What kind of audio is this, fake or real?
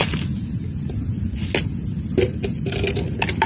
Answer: real